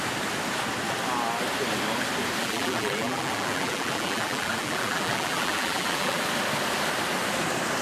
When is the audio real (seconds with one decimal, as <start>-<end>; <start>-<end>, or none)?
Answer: 0.0-2.4; 6.2-7.8